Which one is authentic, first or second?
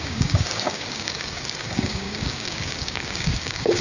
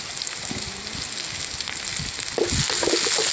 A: second